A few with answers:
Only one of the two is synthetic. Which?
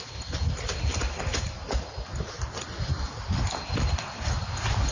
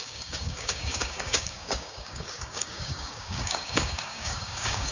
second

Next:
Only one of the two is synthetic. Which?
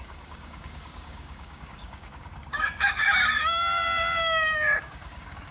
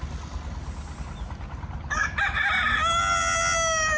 first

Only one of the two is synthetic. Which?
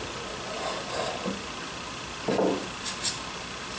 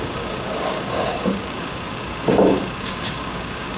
second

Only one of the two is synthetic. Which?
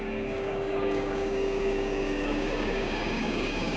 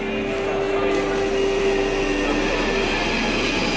first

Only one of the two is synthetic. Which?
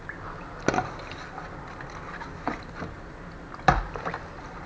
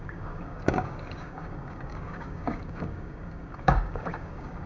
second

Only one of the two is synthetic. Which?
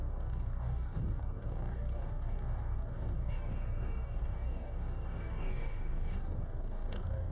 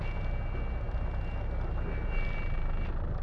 first